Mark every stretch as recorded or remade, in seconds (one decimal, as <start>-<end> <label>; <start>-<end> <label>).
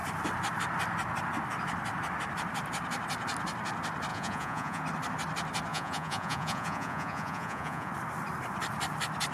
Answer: 0.0-4.1 recorded; 4.1-4.8 remade; 4.8-5.7 recorded; 5.7-7.9 remade; 7.9-9.3 recorded